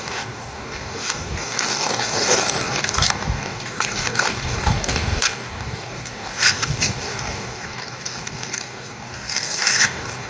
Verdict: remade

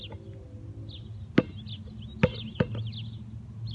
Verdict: recorded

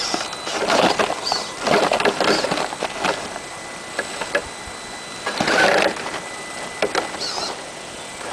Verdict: recorded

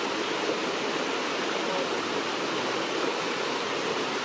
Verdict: recorded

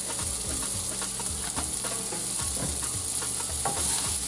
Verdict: recorded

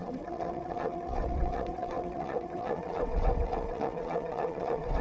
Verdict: remade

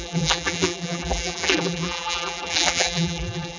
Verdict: remade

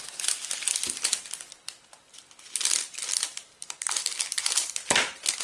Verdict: recorded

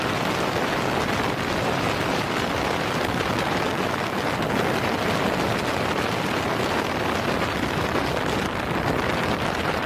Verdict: recorded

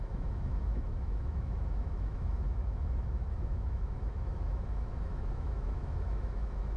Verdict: remade